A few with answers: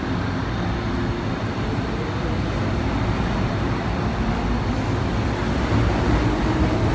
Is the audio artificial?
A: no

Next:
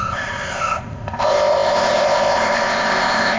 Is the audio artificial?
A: yes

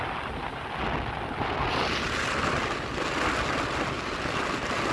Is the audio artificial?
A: no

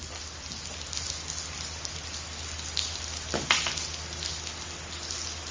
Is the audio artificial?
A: yes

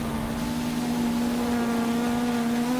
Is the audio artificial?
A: no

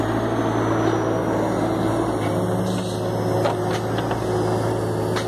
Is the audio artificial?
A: no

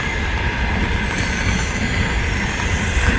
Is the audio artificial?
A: no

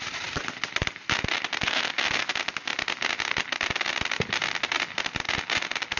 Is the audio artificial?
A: no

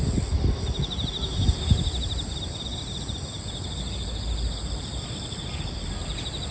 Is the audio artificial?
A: no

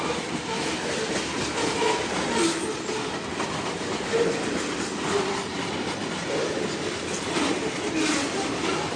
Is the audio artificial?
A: no